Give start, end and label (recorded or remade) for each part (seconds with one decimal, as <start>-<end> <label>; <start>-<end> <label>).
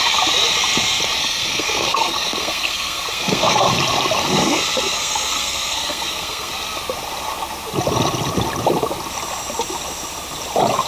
0.0-1.2 recorded; 1.2-3.7 remade; 3.7-4.2 recorded; 4.2-6.5 remade; 6.5-10.9 recorded